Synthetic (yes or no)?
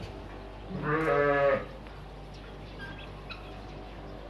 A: no